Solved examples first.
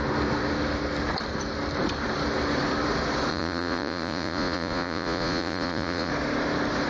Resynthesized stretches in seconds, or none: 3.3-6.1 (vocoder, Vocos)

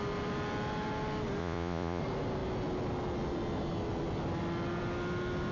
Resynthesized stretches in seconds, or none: 1.4-2.0 (vocoder, Vocos)

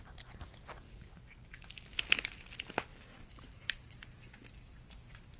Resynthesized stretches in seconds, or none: 2.9-4.0 (vocoder, BigVGAN v2)

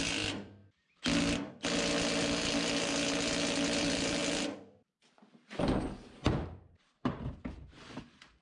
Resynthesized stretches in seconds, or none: 0.0-0.6 (vocoder, BigVGAN v2); 3.8-4.2; 5.3-8.4

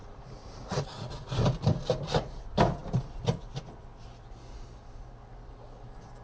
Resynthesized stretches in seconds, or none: 0.0-1.3 (vocoder, Vocos)

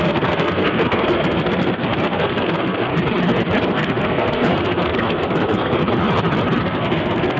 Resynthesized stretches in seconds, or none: 0.0-2.9 (codec, SNAC); 3.6-5.8; 6.6-7.4

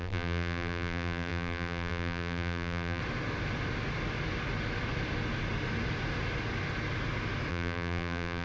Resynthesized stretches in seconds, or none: 0.0-3.0 (vocoder, BigVGAN v2); 7.5-8.4